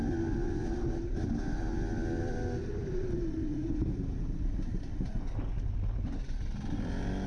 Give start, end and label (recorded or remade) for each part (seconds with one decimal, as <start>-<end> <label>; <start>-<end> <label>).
0.0-2.8 recorded; 2.8-5.3 remade; 5.3-7.3 recorded